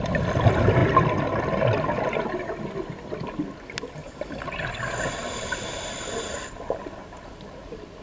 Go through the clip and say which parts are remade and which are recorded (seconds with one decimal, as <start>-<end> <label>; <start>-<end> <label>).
0.0-8.0 recorded